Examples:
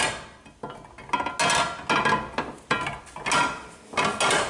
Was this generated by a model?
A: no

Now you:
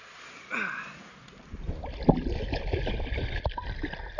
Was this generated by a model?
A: no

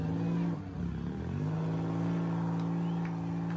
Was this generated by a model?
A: no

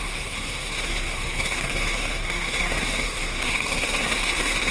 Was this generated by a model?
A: yes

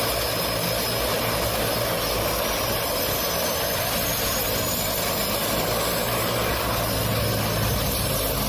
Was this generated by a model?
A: no